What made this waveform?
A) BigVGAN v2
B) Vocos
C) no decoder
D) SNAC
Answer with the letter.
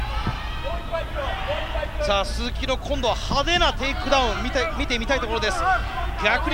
C